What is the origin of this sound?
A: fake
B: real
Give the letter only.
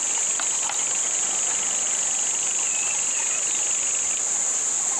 B